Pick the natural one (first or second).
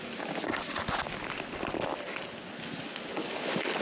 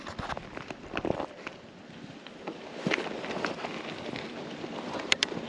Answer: first